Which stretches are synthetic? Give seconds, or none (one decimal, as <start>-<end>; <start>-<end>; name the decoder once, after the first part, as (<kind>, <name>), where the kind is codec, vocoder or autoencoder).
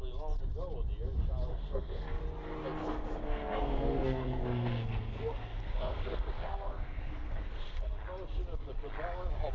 1.5-2.2 (codec, SNAC); 2.8-7.9